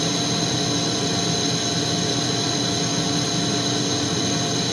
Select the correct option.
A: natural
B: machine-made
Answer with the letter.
A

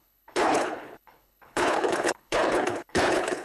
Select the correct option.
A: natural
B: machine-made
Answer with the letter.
B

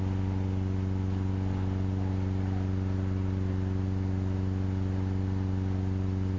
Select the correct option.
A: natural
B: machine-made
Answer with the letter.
A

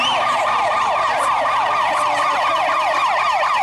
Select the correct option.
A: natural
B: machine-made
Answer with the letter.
A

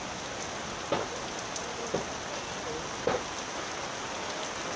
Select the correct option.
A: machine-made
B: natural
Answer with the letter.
B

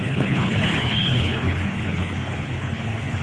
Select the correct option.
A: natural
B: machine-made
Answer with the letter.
B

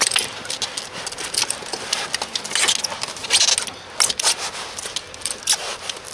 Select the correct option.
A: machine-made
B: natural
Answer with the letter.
B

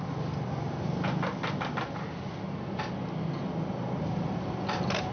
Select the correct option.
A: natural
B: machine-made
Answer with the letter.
A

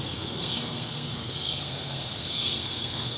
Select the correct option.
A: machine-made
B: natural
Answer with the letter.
A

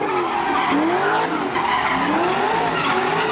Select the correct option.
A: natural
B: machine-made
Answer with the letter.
A